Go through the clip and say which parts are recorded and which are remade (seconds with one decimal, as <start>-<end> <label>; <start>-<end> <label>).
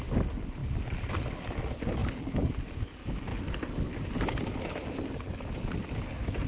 0.0-3.3 recorded; 3.3-5.1 remade; 5.1-6.5 recorded